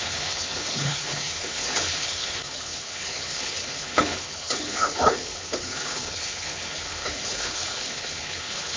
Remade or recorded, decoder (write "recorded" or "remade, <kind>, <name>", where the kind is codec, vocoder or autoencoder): remade, codec, HILCodec